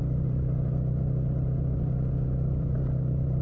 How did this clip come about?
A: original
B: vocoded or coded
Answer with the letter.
A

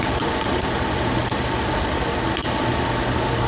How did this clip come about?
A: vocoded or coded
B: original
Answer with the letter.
B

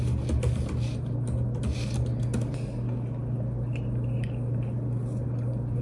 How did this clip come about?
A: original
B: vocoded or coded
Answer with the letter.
A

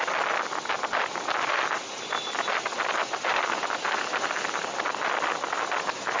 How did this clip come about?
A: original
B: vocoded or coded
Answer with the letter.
A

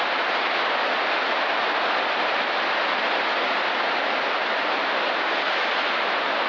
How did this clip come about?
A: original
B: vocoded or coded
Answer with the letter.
A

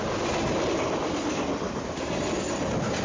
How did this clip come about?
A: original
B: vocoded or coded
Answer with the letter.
A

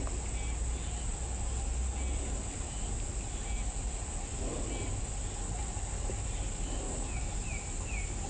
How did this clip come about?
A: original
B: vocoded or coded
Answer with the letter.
A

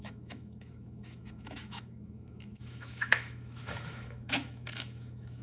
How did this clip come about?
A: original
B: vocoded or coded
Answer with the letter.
B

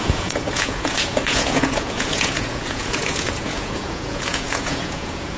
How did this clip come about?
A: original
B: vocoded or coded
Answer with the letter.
B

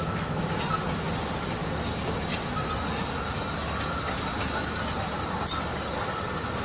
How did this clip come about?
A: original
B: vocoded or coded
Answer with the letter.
A